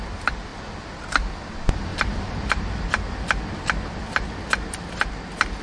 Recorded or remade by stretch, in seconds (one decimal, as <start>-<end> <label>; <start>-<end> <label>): 0.0-5.6 recorded